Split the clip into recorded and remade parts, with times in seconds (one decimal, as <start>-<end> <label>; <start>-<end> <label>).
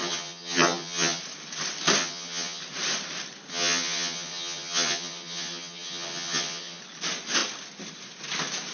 0.0-1.2 remade; 1.2-2.0 recorded; 2.0-2.6 remade; 2.6-3.5 recorded; 3.5-6.8 remade; 6.8-8.7 recorded